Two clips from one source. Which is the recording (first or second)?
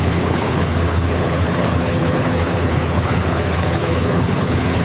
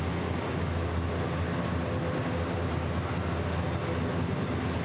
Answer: second